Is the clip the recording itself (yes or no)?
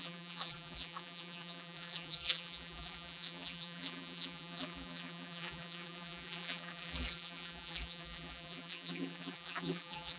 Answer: no